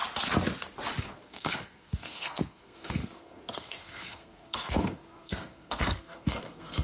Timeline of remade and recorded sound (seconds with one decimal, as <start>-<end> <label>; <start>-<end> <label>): 0.0-1.0 recorded; 1.0-6.8 remade